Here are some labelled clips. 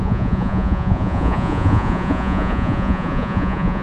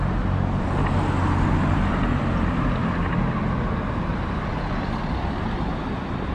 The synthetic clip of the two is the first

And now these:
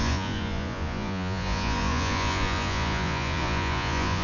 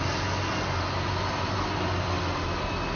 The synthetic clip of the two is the first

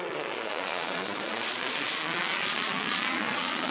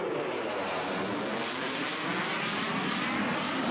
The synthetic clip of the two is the first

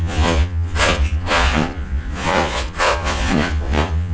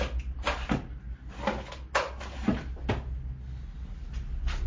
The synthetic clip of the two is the first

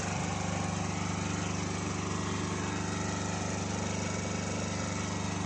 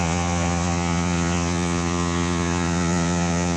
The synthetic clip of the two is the second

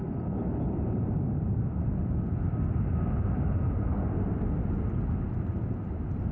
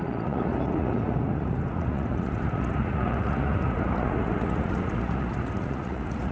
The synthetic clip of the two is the second